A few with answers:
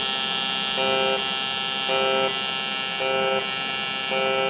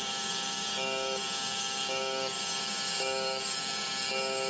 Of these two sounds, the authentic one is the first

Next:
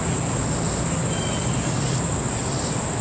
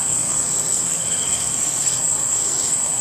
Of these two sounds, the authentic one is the first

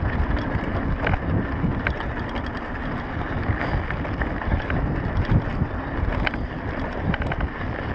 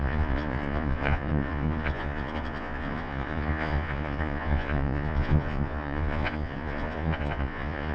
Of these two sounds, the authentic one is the first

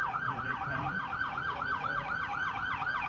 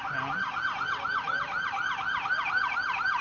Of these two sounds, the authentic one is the second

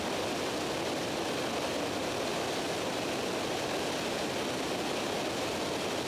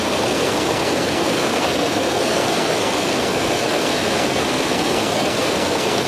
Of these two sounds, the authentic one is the first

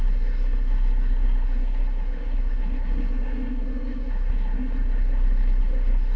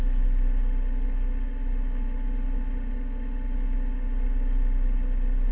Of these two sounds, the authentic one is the second